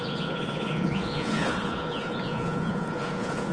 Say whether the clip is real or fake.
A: fake